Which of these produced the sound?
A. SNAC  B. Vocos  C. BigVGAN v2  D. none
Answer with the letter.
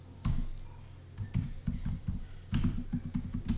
D